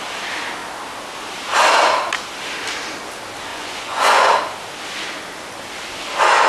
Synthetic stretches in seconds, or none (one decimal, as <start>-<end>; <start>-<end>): 3.5-4.4